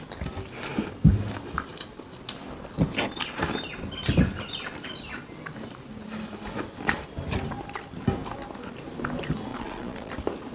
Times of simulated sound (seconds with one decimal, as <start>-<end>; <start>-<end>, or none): 9.5-10.1